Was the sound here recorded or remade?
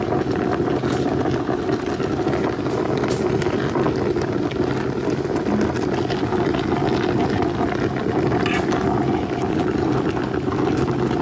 recorded